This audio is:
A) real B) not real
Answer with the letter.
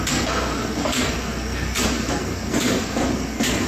B